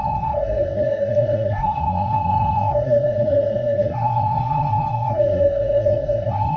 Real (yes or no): no